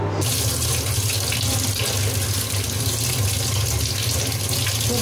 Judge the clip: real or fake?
real